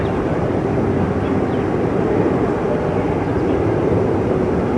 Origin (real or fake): real